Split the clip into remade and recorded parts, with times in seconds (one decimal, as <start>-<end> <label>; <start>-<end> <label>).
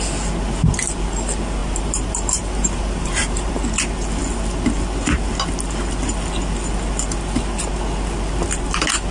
0.0-1.6 recorded; 1.6-3.5 remade; 3.5-9.1 recorded